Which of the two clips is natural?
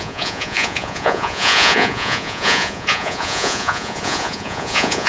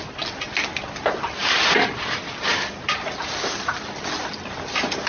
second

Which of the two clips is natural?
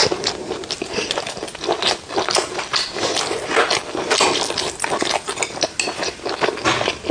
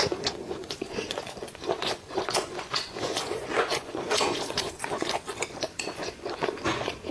first